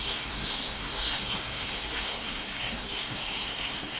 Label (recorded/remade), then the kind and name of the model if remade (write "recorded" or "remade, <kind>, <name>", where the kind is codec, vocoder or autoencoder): remade, codec, SNAC